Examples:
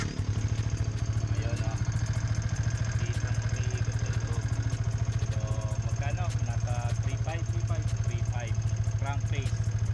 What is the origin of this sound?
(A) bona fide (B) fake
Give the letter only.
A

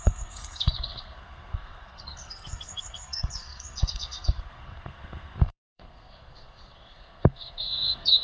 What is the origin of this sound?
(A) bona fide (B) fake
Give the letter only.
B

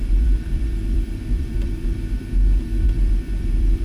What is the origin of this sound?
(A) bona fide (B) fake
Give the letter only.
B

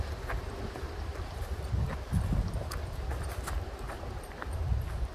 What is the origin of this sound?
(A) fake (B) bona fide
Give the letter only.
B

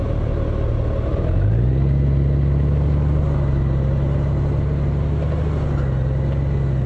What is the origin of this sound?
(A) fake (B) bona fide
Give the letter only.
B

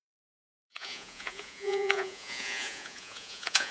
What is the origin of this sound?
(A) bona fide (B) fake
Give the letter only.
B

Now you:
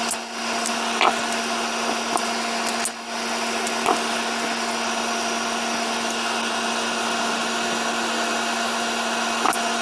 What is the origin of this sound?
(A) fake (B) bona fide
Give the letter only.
B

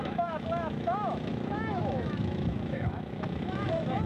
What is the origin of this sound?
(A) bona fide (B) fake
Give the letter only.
B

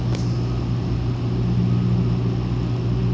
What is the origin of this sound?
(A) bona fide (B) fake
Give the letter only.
A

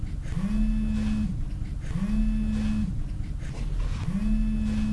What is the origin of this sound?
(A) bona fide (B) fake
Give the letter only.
A